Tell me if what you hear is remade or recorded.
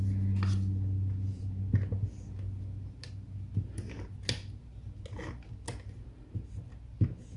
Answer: recorded